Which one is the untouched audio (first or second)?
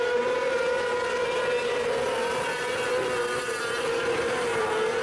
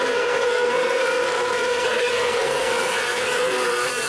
first